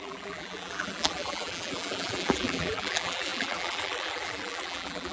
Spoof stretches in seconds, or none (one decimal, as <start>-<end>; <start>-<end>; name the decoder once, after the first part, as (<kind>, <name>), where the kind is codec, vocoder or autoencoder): 0.0-5.1 (vocoder, BigVGAN v2)